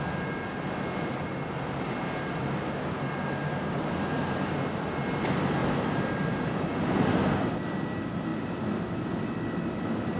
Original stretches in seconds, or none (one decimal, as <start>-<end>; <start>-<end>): 0.0-10.2